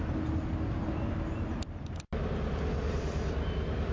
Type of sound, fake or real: real